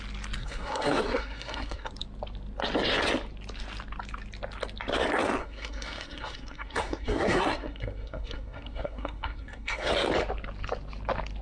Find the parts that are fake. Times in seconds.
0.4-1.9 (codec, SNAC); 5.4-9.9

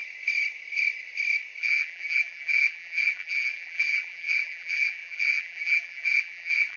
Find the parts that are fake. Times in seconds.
1.6-6.8 (vocoder, BigVGAN v2)

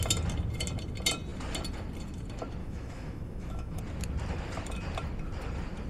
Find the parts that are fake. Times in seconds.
2.6-3.8 (autoencoder, DAC-VAE)